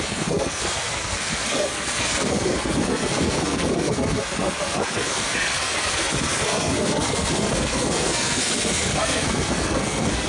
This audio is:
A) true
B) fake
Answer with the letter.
B